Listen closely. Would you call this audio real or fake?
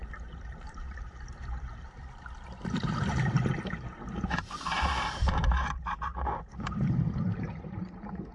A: fake